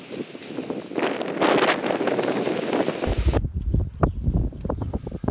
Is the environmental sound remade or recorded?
recorded